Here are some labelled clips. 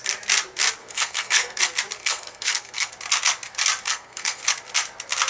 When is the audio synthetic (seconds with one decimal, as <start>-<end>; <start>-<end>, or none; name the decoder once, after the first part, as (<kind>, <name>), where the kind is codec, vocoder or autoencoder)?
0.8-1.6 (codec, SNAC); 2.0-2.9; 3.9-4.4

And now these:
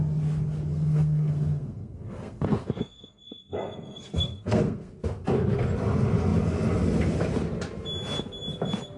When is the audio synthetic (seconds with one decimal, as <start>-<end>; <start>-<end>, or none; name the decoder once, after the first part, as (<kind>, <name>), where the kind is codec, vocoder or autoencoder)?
0.7-4.9 (codec, SNAC)

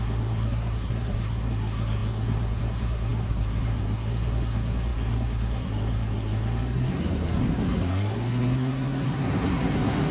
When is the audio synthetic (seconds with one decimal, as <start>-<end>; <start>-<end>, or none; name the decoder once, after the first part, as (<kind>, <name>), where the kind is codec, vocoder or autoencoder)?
0.0-10.1 (codec, SNAC)

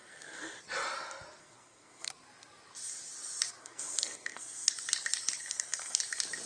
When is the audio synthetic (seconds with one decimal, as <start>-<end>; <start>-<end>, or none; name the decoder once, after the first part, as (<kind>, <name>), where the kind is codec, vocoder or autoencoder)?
0.0-0.6 (codec, SNAC); 1.4-2.1; 3.6-4.7; 5.4-6.0

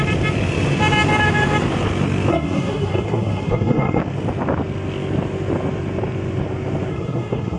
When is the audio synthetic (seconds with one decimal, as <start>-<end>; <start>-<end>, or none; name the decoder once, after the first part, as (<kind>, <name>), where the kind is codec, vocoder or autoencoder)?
2.3-4.0 (codec, SNAC); 6.9-7.6

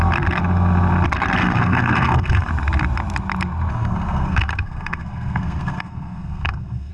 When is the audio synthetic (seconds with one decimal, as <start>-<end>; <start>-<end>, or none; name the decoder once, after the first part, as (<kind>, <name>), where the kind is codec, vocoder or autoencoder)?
1.4-2.5 (codec, SNAC); 3.7-6.9

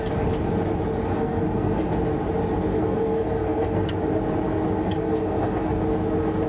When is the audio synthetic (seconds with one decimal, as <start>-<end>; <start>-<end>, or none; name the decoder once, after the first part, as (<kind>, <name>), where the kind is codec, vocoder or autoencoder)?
1.0-1.9 (codec, SNAC); 2.7-3.9; 4.8-5.8

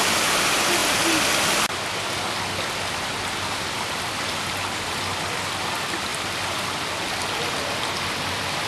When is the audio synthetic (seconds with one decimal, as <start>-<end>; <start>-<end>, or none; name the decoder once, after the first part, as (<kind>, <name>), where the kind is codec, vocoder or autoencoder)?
none